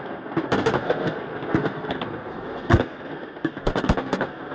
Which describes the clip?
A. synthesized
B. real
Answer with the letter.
A